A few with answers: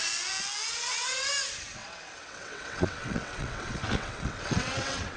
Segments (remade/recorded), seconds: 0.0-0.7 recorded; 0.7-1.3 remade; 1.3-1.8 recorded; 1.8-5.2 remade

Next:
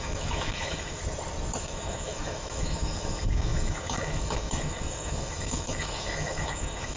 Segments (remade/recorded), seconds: 0.0-1.0 remade; 1.0-1.6 recorded; 1.6-7.0 remade

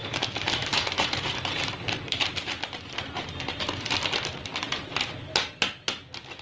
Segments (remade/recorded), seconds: 0.0-2.2 remade; 2.2-6.4 recorded

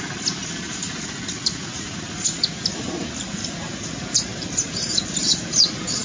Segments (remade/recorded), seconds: 0.0-6.0 recorded

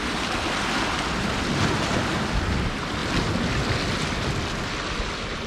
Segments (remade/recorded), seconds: 0.0-5.5 recorded

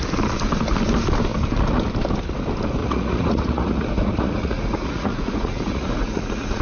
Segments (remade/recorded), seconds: 0.0-2.8 recorded; 2.8-6.6 remade